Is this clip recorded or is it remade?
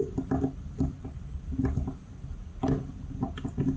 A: recorded